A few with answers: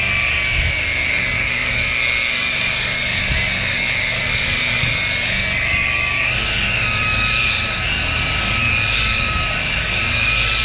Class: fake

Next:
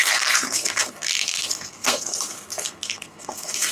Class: fake